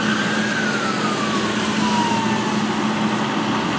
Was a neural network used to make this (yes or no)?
no